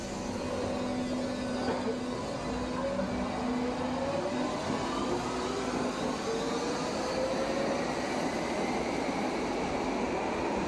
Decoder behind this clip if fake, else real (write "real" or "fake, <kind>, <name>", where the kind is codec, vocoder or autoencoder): real